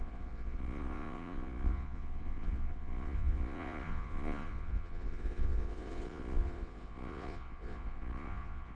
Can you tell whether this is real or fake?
fake